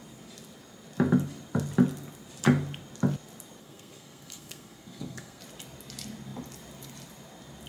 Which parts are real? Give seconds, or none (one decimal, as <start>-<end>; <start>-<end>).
0.0-3.6; 5.4-7.7